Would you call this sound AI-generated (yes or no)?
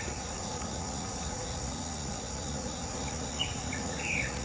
yes